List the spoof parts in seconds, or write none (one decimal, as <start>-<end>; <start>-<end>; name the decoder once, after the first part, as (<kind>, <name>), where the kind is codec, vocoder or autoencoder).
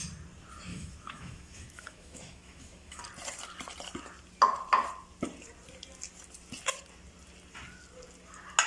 0.7-3.0 (autoencoder, DAC-VAE)